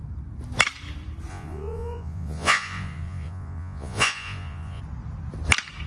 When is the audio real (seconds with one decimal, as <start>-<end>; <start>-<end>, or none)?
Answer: 0.0-1.3; 4.8-5.9